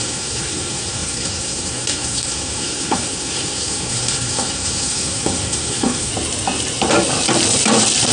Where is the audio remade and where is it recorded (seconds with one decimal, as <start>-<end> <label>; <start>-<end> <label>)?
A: 0.0-6.1 remade; 6.1-8.1 recorded